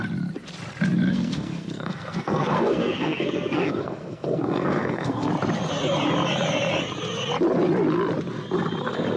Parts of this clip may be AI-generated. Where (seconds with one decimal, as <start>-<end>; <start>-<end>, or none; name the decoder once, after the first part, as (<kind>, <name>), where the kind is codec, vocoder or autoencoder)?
1.1-5.3 (codec, SNAC)